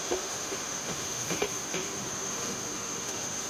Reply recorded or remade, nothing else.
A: remade